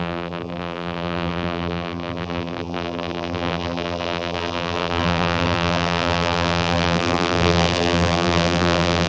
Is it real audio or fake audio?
fake